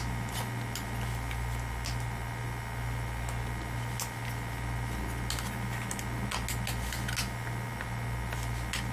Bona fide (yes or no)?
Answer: yes